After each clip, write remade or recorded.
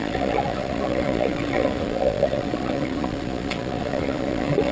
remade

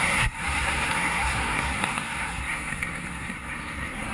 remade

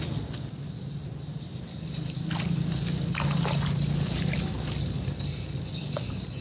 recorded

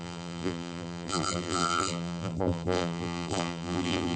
remade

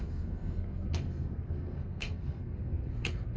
remade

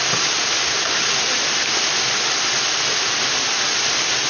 recorded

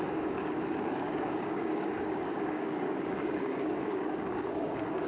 remade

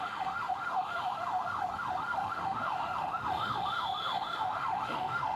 remade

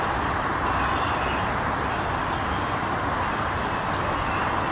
recorded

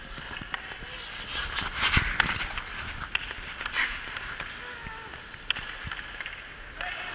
recorded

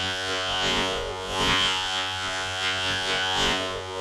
remade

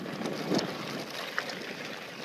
recorded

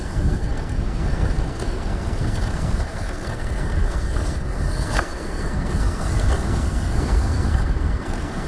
remade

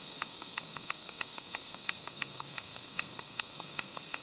remade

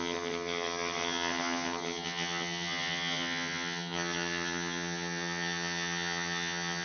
remade